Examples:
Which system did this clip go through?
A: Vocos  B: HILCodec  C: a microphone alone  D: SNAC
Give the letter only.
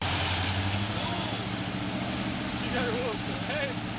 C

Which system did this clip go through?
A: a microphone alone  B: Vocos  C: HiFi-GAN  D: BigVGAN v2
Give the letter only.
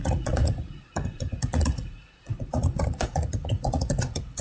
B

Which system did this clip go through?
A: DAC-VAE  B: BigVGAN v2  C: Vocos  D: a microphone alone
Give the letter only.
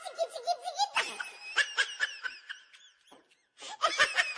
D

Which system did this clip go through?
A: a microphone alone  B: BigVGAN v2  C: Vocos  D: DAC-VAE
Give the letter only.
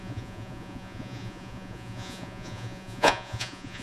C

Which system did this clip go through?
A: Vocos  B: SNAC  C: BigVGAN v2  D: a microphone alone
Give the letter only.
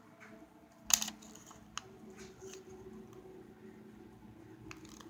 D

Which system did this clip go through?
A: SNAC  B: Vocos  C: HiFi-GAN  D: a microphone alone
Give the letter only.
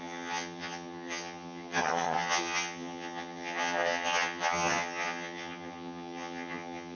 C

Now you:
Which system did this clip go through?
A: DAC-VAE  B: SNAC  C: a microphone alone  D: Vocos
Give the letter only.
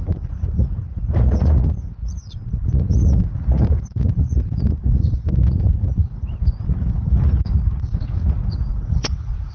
D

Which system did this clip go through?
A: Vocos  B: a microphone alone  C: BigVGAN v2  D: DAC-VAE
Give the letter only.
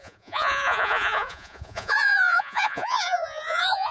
A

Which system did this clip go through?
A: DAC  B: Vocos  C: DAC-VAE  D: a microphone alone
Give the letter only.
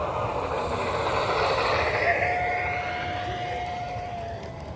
D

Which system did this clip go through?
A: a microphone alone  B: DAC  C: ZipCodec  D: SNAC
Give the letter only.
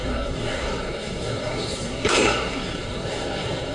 D